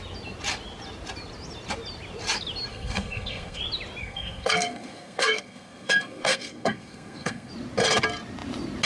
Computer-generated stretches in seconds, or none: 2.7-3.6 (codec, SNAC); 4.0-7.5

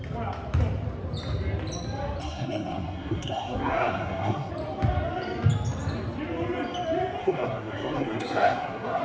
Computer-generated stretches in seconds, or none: 2.2-4.5 (codec, SNAC); 7.2-9.0